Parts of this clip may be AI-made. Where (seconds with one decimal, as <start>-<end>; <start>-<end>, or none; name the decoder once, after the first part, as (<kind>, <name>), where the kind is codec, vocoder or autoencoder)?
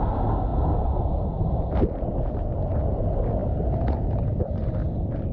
none